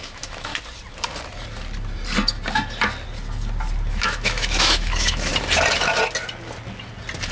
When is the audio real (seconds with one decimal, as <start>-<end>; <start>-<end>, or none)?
0.5-3.9; 5.3-7.3